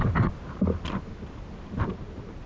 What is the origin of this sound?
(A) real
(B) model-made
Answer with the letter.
A